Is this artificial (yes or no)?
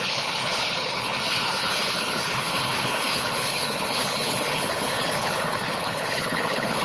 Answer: yes